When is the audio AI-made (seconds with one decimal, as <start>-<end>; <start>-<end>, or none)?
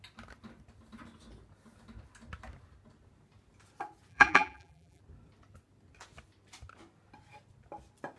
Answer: 4.1-5.0